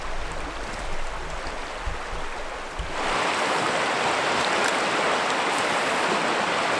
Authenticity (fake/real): real